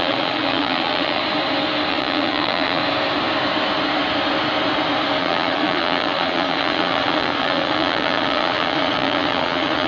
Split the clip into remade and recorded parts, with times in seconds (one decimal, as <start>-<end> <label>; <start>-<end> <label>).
0.0-1.2 remade; 1.2-1.9 recorded; 1.9-2.8 remade; 2.8-5.2 recorded; 5.2-9.9 remade